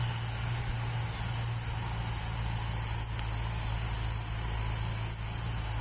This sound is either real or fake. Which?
real